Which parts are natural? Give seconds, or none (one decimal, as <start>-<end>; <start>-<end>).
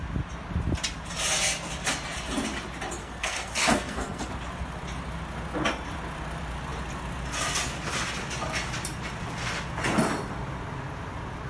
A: 0.0-3.0; 4.3-11.5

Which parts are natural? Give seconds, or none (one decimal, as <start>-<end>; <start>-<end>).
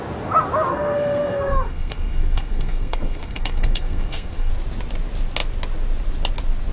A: 0.0-0.7; 4.5-6.7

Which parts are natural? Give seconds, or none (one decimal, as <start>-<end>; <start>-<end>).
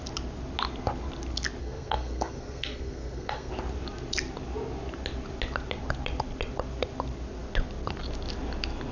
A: 0.0-1.6; 3.5-8.9